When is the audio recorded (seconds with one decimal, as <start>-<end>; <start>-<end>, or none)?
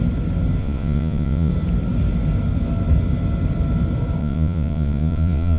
0.0-0.6; 1.5-4.2